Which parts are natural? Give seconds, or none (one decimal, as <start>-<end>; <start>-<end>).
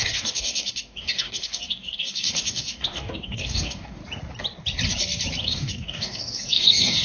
4.0-5.4